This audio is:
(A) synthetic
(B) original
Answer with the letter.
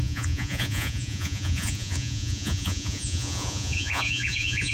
A